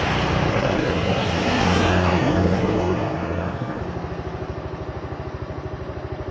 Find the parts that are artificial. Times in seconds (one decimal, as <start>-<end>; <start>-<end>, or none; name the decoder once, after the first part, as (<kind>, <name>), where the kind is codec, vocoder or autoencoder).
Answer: 0.5-3.8 (codec, SNAC)

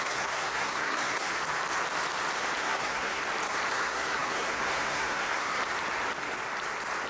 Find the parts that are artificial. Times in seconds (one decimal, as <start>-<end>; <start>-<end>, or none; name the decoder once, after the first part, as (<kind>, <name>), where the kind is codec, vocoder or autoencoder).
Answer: 0.0-1.3 (codec, SNAC); 2.6-3.2; 3.7-5.6